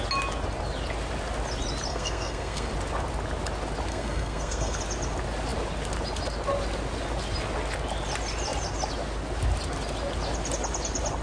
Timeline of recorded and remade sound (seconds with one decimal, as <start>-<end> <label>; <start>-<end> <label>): 0.0-1.9 recorded; 1.9-2.7 remade; 2.7-3.9 recorded; 3.9-4.8 remade; 4.8-11.2 recorded